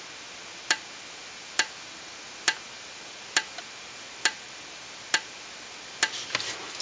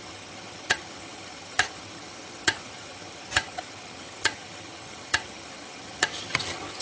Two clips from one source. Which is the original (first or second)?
first